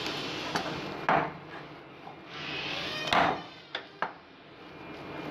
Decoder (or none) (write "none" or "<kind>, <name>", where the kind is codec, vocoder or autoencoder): none